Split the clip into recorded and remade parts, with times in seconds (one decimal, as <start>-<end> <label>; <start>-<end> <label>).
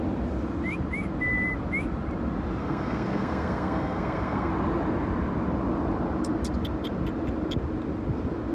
0.0-2.6 recorded; 2.6-4.5 remade; 4.5-8.5 recorded